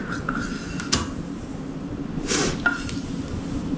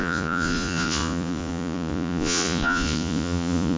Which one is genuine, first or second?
first